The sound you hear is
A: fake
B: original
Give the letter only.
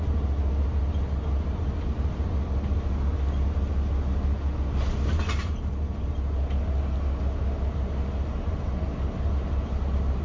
B